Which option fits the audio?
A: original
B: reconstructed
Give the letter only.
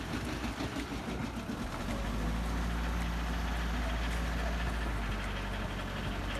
A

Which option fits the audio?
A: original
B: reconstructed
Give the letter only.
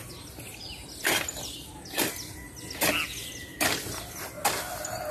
A